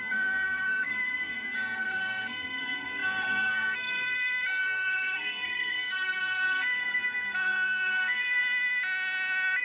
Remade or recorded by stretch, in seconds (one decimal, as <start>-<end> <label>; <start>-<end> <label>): 0.0-8.4 remade; 8.4-9.6 recorded